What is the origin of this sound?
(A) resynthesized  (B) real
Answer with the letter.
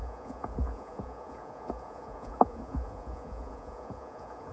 A